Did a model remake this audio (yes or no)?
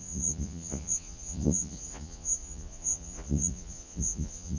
yes